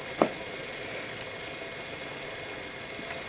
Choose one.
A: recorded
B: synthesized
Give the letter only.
A